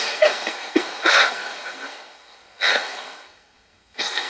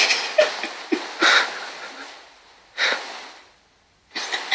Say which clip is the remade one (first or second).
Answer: first